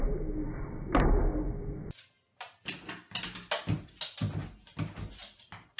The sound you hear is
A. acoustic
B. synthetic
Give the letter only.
A